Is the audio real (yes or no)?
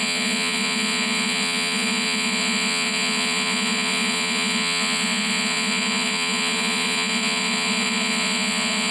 no